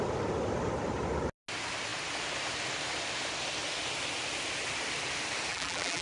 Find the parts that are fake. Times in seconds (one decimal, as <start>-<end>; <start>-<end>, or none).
5.5-6.0